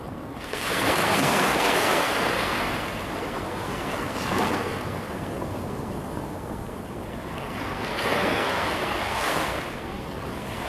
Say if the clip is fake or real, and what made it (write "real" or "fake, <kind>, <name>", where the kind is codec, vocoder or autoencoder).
fake, codec, SNAC